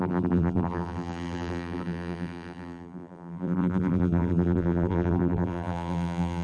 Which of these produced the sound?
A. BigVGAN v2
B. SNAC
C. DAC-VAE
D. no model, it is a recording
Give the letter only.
A